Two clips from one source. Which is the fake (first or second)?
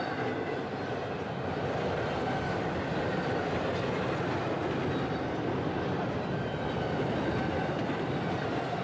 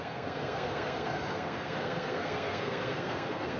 second